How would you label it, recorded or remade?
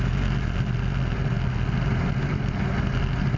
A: recorded